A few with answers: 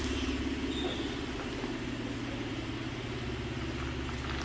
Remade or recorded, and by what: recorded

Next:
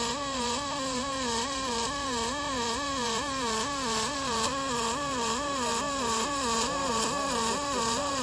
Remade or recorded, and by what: remade, vocoder, BigVGAN v2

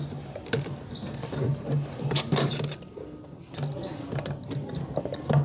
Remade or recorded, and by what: recorded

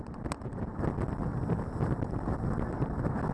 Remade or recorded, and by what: remade, vocoder, BigVGAN v2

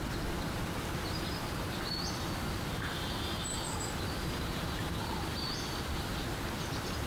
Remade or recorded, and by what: remade, vocoder, BigVGAN v2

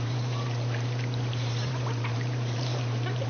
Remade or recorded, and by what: remade, vocoder, BigVGAN v2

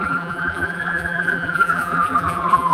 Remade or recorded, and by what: remade, vocoder, BigVGAN v2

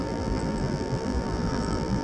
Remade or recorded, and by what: remade, vocoder, BigVGAN v2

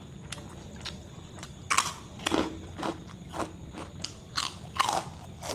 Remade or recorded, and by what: recorded